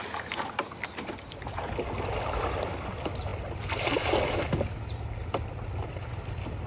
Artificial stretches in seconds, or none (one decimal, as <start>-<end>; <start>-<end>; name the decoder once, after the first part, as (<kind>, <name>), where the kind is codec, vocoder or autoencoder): none